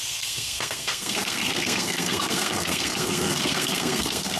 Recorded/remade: remade